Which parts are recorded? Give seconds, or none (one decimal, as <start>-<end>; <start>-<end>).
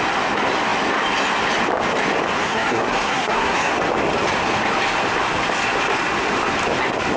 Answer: 0.0-2.4; 3.7-7.2